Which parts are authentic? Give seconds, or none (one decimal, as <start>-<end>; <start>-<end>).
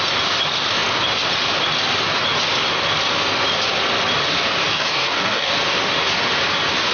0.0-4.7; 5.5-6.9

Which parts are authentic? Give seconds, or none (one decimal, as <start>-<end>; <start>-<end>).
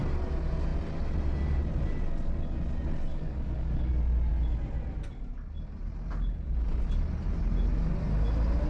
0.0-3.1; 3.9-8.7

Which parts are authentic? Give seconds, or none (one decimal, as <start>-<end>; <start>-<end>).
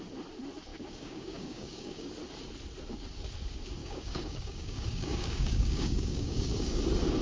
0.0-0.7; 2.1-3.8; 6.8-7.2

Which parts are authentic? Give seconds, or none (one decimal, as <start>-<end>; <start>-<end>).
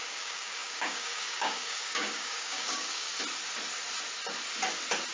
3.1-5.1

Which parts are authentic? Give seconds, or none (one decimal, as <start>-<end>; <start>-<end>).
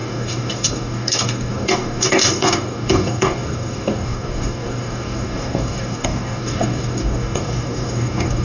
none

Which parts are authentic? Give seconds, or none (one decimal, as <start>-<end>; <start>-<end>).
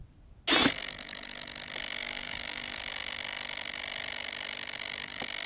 0.0-2.0; 2.8-5.5